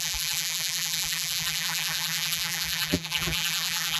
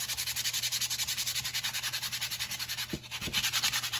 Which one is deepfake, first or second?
first